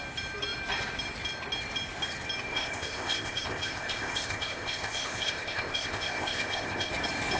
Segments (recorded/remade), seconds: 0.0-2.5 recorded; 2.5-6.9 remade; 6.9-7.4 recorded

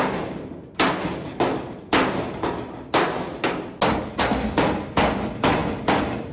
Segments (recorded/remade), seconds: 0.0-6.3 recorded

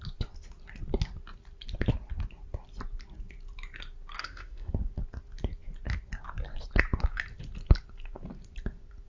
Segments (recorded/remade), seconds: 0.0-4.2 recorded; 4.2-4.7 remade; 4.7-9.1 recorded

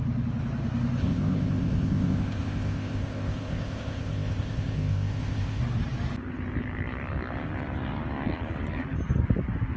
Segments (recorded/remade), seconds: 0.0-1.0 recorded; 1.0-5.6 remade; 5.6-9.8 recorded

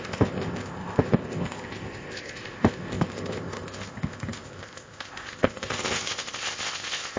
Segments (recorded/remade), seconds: 0.0-7.2 remade

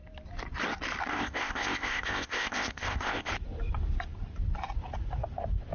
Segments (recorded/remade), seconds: 0.0-1.1 recorded; 1.1-3.3 remade; 3.3-5.7 recorded

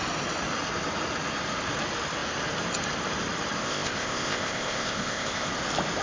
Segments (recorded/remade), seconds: 0.0-3.6 recorded; 3.6-5.5 remade; 5.5-6.0 recorded

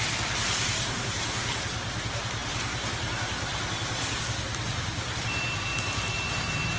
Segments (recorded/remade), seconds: 0.0-6.8 recorded